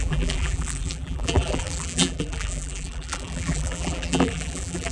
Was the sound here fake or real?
fake